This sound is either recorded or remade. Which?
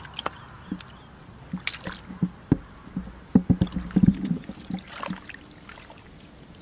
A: recorded